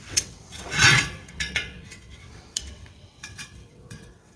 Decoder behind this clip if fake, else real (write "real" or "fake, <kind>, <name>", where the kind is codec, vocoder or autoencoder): fake, vocoder, WaveNeXt